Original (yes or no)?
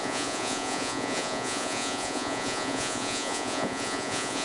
no